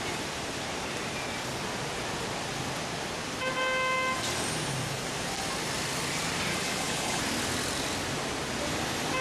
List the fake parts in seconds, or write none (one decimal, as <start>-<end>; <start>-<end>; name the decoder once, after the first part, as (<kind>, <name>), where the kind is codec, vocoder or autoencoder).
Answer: 6.5-7.2 (codec, HILCodec)